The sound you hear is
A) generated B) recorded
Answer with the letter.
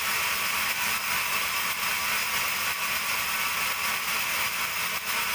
B